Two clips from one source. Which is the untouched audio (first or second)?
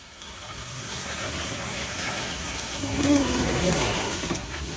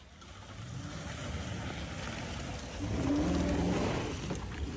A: second